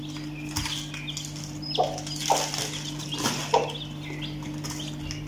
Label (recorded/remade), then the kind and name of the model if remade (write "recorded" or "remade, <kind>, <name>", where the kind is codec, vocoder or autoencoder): recorded